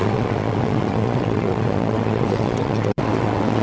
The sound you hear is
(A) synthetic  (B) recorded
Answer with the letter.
A